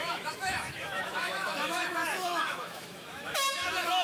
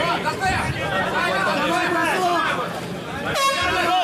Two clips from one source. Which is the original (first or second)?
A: second